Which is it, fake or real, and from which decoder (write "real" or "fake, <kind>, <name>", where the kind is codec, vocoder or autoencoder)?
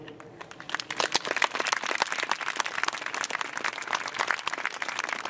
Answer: real